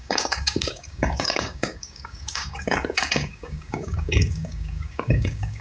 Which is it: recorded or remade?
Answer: remade